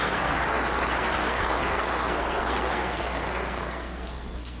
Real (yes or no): no